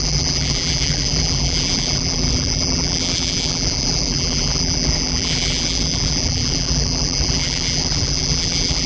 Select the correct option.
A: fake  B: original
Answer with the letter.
A